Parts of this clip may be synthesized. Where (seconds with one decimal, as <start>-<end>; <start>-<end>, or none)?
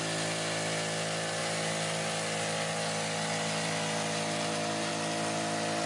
none